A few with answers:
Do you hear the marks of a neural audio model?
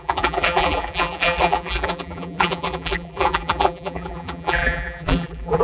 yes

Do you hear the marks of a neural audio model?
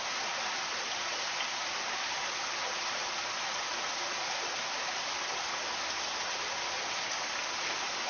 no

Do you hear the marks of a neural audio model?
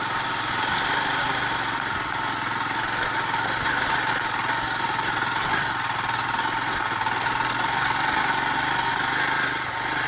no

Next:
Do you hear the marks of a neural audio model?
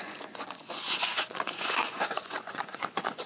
yes